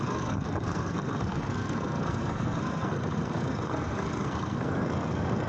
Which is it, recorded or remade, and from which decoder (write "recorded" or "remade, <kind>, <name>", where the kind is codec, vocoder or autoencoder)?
remade, codec, SNAC